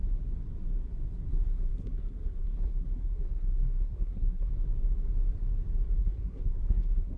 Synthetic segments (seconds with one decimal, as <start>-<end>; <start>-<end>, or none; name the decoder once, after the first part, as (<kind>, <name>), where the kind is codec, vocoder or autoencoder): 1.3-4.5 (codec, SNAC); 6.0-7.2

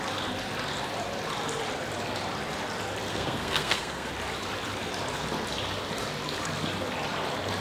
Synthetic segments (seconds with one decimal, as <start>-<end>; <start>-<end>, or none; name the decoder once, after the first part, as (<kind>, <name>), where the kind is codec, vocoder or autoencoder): 3.1-4.1 (codec, SNAC)

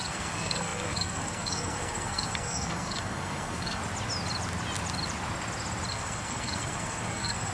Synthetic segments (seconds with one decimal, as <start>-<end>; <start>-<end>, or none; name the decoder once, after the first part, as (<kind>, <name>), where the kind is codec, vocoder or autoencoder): 0.0-3.8 (codec, SNAC); 5.9-7.5

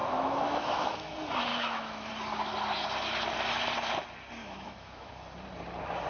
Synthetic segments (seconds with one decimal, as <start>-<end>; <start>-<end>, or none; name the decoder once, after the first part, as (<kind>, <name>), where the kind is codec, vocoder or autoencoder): 0.0-1.1 (autoencoder, DAC-VAE); 1.5-2.1; 4.4-5.1